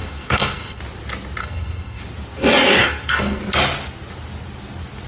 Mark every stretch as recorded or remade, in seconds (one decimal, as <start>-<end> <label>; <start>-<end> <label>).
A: 0.0-0.8 remade; 0.8-1.4 recorded; 1.4-2.0 remade; 2.0-2.8 recorded; 2.8-3.4 remade; 3.4-5.1 recorded